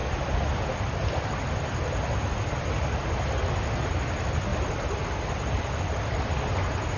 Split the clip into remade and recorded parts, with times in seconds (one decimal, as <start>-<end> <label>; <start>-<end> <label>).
0.0-7.0 recorded